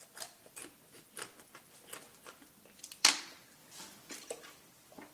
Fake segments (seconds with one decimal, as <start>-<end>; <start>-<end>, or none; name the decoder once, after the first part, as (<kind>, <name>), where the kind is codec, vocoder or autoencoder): 0.0-1.5 (vocoder, BigVGAN v2); 2.2-3.6; 4.1-5.1